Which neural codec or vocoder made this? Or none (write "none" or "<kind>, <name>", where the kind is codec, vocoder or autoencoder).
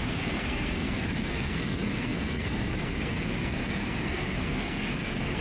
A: codec, SNAC